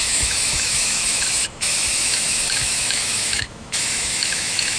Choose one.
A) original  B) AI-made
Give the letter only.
B